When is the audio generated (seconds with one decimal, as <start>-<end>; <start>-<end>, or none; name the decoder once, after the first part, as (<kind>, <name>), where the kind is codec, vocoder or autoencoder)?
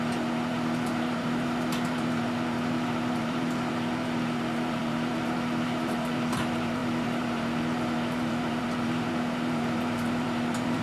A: 0.0-10.8 (vocoder, BigVGAN v2)